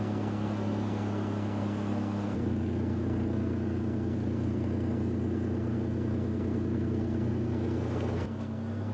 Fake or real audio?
fake